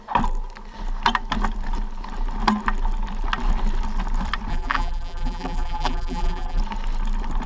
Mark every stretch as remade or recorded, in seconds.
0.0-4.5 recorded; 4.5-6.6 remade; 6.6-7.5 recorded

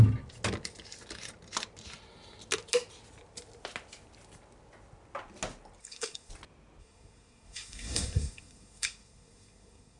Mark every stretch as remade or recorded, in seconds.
0.0-5.8 recorded; 5.8-6.3 remade; 6.3-6.8 recorded; 6.8-10.0 remade

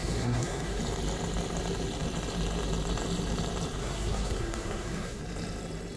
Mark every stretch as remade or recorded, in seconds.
0.0-0.8 remade; 0.8-3.8 recorded; 3.8-5.2 remade; 5.2-6.0 recorded

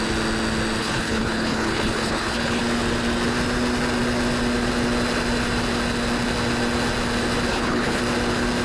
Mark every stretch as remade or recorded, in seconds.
0.0-0.8 recorded; 0.8-2.6 remade; 2.6-7.5 recorded; 7.5-8.0 remade; 8.0-8.6 recorded